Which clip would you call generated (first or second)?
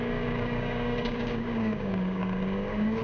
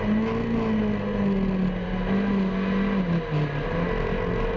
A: first